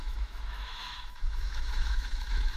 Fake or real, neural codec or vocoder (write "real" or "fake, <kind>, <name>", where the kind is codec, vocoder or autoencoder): fake, autoencoder, DAC-VAE